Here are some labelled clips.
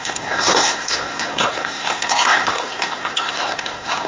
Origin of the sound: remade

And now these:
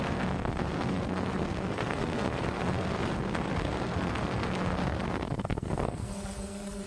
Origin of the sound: remade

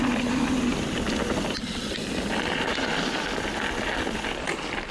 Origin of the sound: recorded